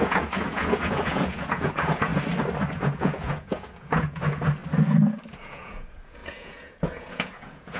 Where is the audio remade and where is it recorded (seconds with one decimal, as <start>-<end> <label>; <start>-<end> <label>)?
0.0-2.1 remade; 2.1-2.7 recorded; 2.7-4.6 remade; 4.6-5.3 recorded; 5.3-7.8 remade